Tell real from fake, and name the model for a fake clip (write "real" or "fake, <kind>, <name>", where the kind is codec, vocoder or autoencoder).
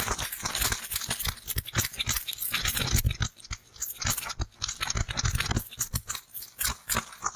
real